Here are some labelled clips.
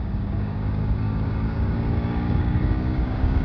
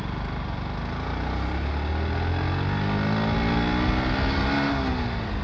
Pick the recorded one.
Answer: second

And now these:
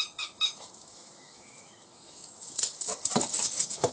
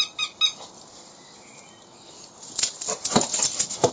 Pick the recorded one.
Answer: second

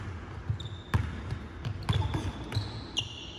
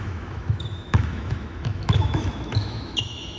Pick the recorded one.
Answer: first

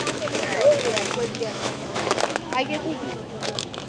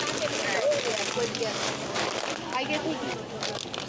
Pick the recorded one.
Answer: second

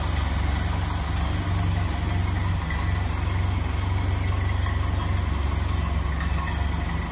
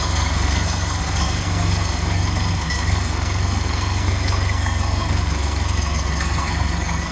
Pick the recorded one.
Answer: first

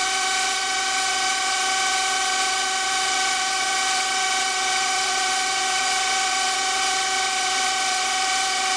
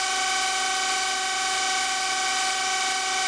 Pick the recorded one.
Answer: second